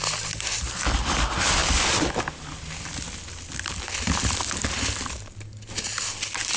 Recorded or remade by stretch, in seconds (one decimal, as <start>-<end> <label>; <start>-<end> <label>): 0.0-6.6 recorded